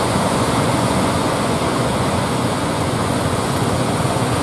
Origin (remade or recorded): remade